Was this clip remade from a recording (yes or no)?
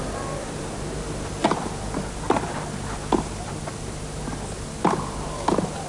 no